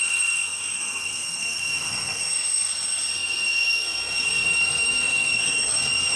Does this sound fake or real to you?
fake